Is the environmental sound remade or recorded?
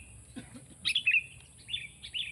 recorded